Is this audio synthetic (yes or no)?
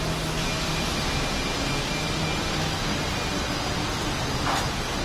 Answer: no